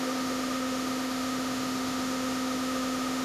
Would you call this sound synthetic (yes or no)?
yes